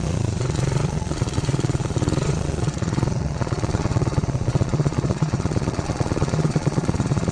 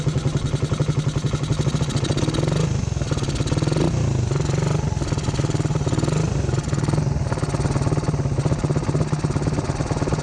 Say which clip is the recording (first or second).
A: second